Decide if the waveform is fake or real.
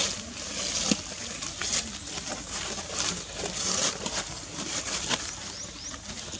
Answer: real